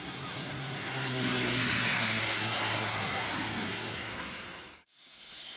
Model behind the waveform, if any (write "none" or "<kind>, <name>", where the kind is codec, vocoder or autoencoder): codec, SNAC